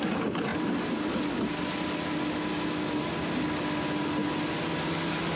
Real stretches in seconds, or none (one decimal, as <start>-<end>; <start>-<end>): 0.0-5.4